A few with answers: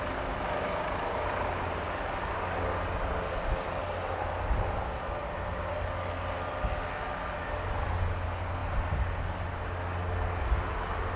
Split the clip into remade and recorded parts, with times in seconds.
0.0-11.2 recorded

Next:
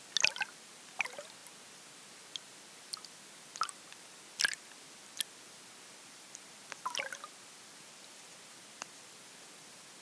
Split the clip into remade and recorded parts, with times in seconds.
0.0-10.0 recorded

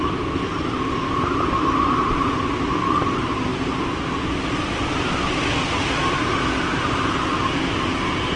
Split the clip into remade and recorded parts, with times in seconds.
0.0-8.4 recorded

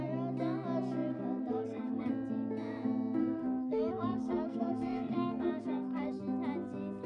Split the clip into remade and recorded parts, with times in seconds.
0.0-1.5 recorded; 1.5-2.1 remade; 2.1-3.2 recorded; 3.2-6.2 remade; 6.2-7.1 recorded

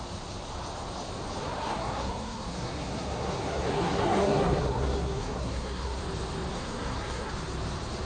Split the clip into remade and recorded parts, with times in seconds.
0.0-1.4 recorded; 1.4-6.0 remade; 6.0-6.5 recorded; 6.5-7.3 remade; 7.3-8.0 recorded

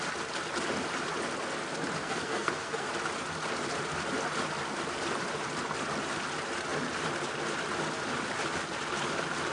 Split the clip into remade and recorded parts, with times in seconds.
0.0-2.0 recorded; 2.0-2.9 remade; 2.9-9.5 recorded

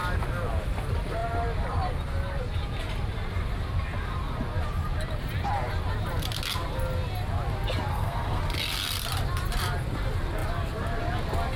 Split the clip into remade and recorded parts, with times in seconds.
0.0-7.9 recorded; 7.9-8.4 remade; 8.4-11.6 recorded

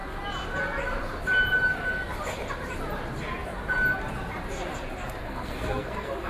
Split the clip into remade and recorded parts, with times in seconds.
0.0-5.2 recorded; 5.2-6.3 remade